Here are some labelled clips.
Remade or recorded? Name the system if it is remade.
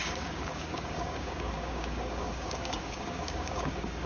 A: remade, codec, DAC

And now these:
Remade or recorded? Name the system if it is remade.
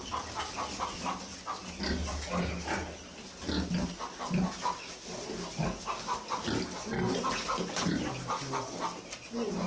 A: recorded